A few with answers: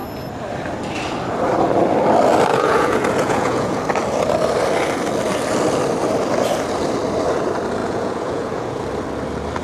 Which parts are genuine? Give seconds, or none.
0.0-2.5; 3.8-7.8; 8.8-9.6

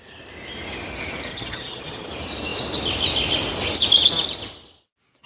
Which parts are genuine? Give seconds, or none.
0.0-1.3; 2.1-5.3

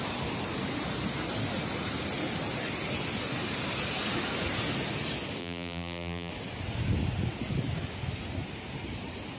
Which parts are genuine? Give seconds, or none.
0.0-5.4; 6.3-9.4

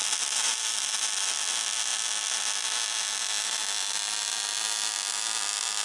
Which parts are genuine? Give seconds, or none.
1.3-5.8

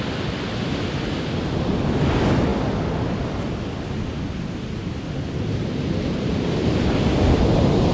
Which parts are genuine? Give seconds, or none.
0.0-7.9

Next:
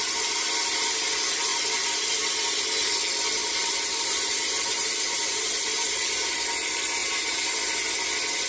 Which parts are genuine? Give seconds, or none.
0.0-3.4; 6.3-7.0; 7.5-8.5

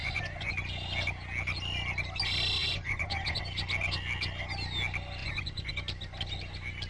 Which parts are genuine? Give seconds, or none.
0.5-2.6; 3.4-5.2; 5.7-6.9